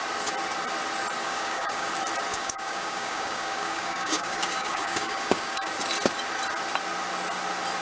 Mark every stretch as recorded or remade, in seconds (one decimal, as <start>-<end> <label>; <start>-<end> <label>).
0.0-1.2 recorded; 1.2-1.9 remade; 1.9-2.3 recorded; 2.3-5.7 remade; 5.7-7.8 recorded